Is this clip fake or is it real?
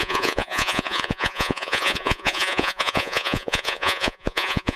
fake